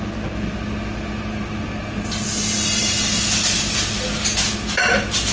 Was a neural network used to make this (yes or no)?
no